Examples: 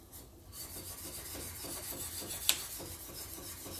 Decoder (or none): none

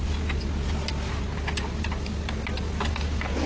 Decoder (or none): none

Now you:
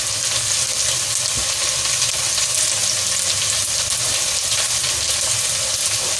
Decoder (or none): none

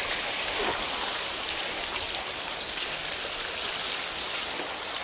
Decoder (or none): none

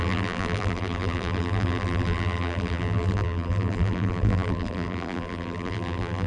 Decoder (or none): vocoder, BigVGAN v2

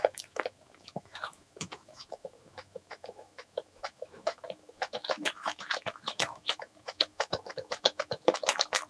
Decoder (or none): autoencoder, DAC-VAE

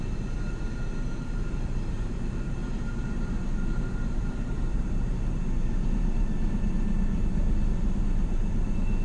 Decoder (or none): vocoder, BigVGAN v2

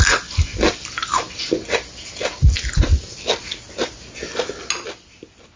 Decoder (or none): none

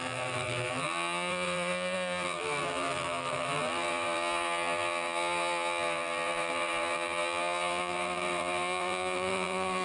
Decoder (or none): vocoder, BigVGAN v2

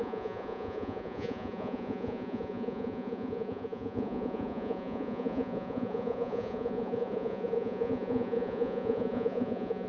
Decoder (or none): vocoder, Vocos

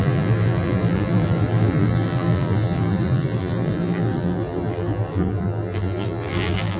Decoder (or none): vocoder, BigVGAN v2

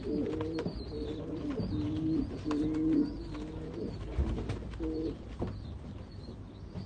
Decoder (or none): none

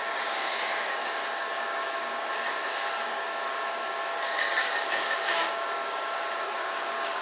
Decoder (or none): codec, DAC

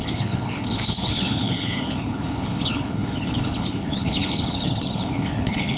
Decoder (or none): codec, HILCodec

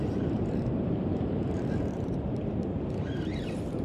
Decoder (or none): vocoder, BigVGAN v2